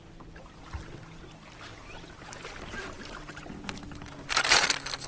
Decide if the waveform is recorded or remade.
recorded